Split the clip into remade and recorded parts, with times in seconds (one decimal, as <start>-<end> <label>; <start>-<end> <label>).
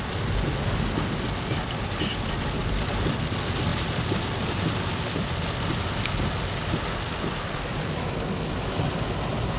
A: 0.0-9.6 recorded